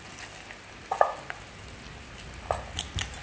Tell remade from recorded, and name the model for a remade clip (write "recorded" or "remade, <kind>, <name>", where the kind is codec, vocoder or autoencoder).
recorded